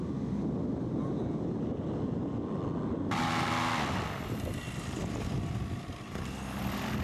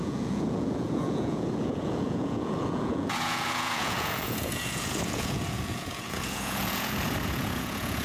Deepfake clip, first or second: second